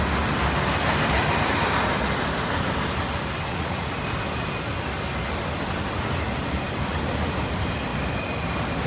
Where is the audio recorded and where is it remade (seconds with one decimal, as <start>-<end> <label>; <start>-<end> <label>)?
0.0-3.5 recorded; 3.5-4.0 remade; 4.0-8.9 recorded